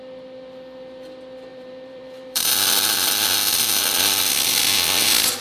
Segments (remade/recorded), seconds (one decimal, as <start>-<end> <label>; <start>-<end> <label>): 0.0-1.5 recorded; 1.5-4.3 remade; 4.3-5.4 recorded